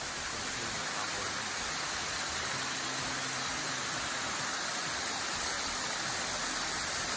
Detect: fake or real real